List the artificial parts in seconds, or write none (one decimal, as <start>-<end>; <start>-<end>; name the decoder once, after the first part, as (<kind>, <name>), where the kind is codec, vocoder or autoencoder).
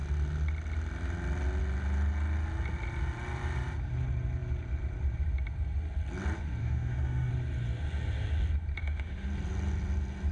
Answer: 6.6-7.3 (autoencoder, DAC-VAE); 8.8-9.3